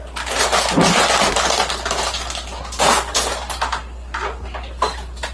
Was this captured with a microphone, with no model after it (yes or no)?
yes